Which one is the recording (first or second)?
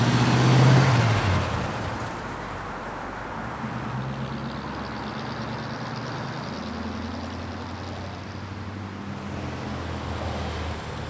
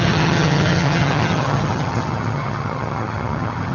first